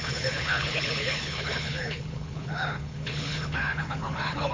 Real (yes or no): no